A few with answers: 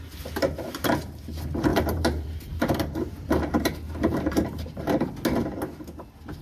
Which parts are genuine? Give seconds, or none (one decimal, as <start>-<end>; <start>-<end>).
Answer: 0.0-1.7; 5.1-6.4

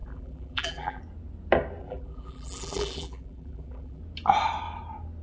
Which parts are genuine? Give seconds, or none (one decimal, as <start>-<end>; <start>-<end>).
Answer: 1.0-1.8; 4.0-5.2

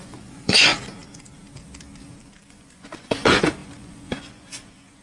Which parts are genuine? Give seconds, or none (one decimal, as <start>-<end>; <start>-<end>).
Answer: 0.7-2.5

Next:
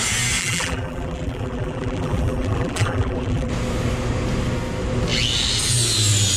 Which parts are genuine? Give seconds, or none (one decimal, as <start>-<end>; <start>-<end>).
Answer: 0.0-0.4; 3.5-6.4

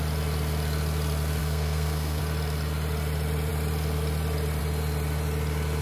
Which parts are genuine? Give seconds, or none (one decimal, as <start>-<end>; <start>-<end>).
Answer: 0.0-1.4; 2.2-5.8

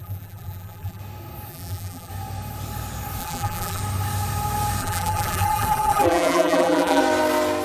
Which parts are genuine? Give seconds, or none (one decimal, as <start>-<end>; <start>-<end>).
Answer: 1.0-1.5; 2.1-3.2; 3.8-4.8; 7.0-7.6

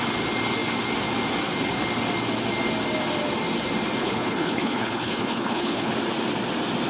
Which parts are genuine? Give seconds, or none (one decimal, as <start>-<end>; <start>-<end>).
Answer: 0.0-4.0; 5.9-6.9

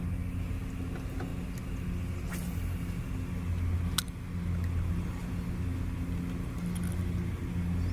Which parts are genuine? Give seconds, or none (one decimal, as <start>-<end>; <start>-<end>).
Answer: 0.0-7.9